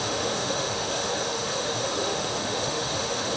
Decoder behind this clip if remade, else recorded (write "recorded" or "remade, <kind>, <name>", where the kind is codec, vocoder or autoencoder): remade, autoencoder, DAC-VAE